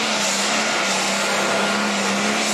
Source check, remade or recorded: recorded